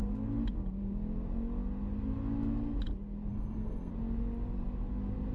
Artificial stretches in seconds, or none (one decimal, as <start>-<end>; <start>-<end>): 3.3-3.9